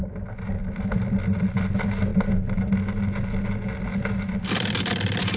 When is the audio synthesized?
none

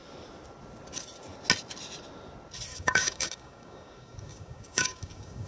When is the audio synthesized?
2.7-5.5 (codec, DAC)

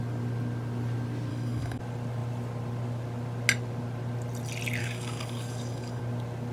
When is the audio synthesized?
1.3-1.8 (codec, DAC); 4.8-6.0

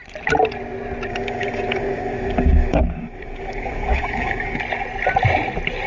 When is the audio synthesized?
1.1-4.6 (codec, DAC)

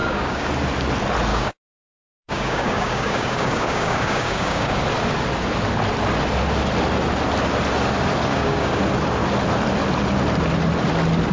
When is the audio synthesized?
0.0-0.5 (codec, DAC); 1.3-4.8; 8.3-8.8

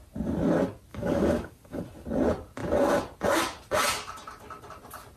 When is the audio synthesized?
0.9-1.8 (codec, DAC)

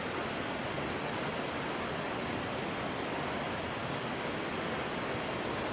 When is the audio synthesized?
3.8-4.4 (codec, DAC)

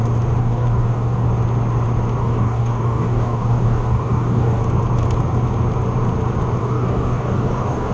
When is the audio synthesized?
0.4-1.3 (codec, DAC); 2.2-4.6; 6.6-7.9